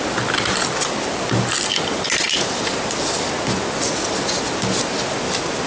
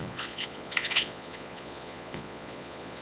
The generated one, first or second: second